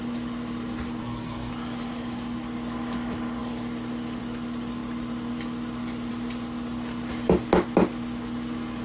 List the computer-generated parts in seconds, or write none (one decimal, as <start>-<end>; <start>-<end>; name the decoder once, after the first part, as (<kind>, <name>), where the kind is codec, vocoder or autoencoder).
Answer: 1.0-1.5 (codec, SNAC)